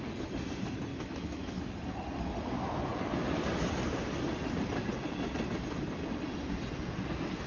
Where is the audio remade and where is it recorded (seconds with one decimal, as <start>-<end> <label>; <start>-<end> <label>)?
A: 0.0-0.9 recorded; 0.9-1.6 remade; 1.6-7.5 recorded